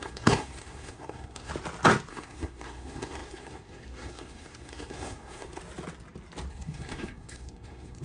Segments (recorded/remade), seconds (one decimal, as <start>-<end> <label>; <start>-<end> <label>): 0.0-1.5 remade; 1.5-2.1 recorded; 2.1-5.6 remade; 5.6-6.5 recorded; 6.5-8.0 remade

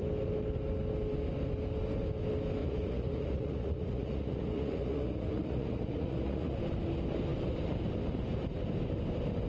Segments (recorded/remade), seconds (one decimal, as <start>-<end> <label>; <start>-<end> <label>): 0.0-2.6 recorded; 2.6-6.6 remade; 6.6-9.5 recorded